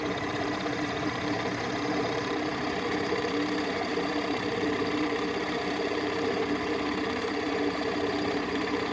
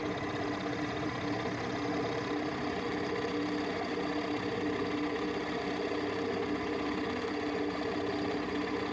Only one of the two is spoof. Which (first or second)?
first